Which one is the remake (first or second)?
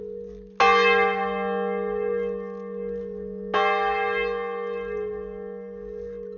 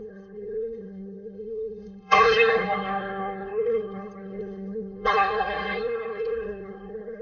second